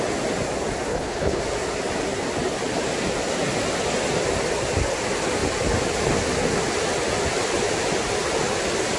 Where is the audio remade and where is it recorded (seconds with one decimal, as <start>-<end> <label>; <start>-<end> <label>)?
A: 0.0-0.9 recorded; 0.9-1.4 remade; 1.4-9.0 recorded